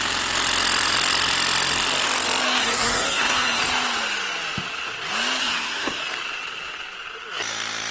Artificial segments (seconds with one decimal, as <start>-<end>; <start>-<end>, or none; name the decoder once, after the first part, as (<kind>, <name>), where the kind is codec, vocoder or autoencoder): 2.6-3.6 (codec, SNAC); 5.4-6.0